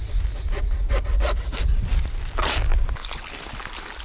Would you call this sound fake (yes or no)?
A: no